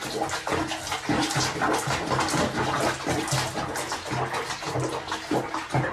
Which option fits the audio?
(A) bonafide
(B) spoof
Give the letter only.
A